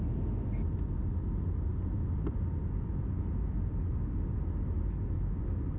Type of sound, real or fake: real